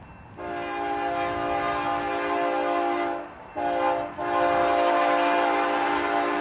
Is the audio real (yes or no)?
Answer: yes